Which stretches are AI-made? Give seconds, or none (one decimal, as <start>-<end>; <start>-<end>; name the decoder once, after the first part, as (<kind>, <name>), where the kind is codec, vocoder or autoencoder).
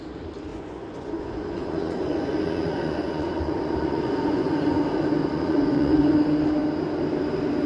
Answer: 0.5-4.8 (vocoder, Vocos); 5.2-6.1